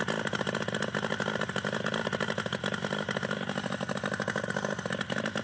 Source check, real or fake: real